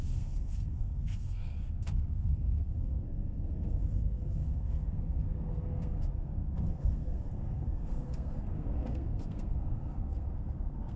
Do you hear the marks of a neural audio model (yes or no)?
yes